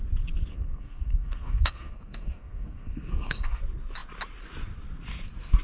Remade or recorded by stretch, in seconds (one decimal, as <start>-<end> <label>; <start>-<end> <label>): 0.0-0.5 recorded; 0.5-3.6 remade; 3.6-5.6 recorded